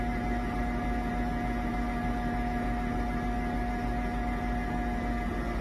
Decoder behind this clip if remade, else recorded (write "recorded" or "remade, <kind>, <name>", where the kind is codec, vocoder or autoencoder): recorded